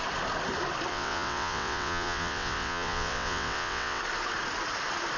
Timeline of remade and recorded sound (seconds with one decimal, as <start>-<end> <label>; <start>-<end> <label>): 0.0-0.9 recorded; 0.9-4.0 remade; 4.0-5.2 recorded